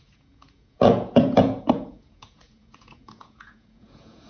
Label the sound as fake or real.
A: fake